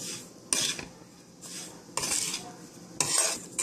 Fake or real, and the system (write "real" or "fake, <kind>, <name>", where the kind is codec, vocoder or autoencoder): real